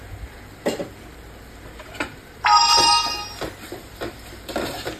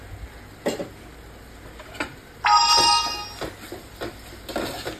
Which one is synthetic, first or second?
first